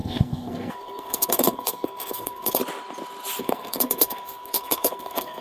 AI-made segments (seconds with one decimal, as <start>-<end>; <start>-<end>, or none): 0.0-2.6; 3.4-5.4